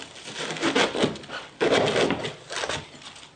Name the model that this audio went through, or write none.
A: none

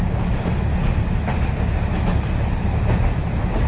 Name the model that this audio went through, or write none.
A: none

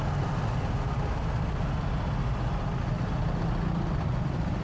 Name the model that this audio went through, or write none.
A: none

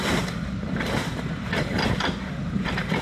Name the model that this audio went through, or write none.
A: vocoder, BigVGAN v2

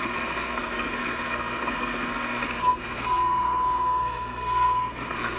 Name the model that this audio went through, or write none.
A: codec, SNAC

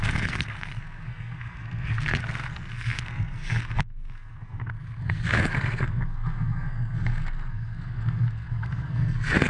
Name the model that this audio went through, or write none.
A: codec, SNAC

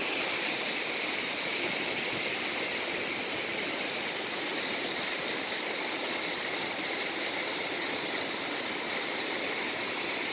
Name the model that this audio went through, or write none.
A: none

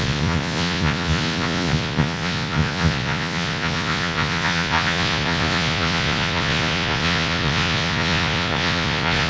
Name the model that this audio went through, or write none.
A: vocoder, Vocos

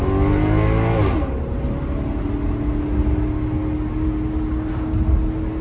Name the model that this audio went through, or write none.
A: none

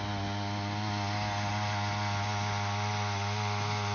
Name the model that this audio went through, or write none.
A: none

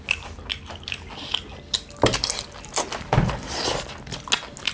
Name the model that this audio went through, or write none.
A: none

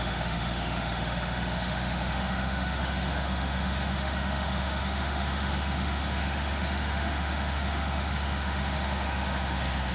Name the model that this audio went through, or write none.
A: autoencoder, DAC-VAE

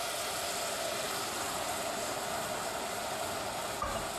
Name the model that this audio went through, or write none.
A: none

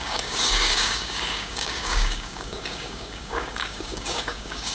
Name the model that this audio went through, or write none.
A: codec, DAC